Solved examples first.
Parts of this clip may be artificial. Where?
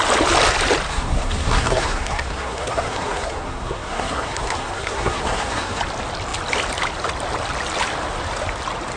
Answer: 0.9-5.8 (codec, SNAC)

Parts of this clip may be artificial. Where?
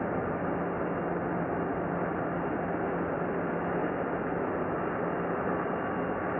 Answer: none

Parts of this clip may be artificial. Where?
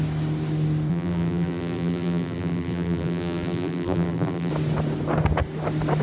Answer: 0.9-4.5 (vocoder, BigVGAN v2)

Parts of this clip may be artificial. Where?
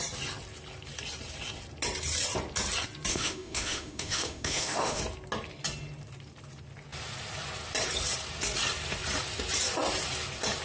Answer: 3.1-5.0 (autoencoder, DAC-VAE)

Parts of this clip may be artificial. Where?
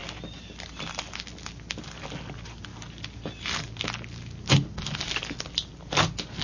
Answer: none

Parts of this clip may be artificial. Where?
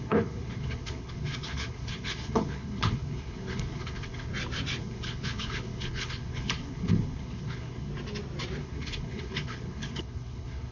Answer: 0.0-4.3 (codec, HILCodec); 4.8-7.9; 8.6-10.7